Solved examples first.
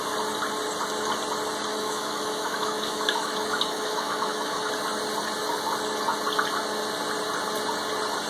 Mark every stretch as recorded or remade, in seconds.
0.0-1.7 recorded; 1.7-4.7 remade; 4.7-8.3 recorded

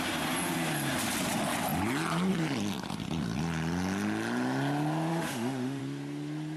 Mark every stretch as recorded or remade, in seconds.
0.0-5.1 recorded; 5.1-5.8 remade; 5.8-6.6 recorded

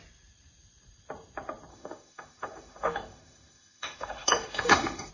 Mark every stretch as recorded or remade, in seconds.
0.0-1.7 recorded; 1.7-5.1 remade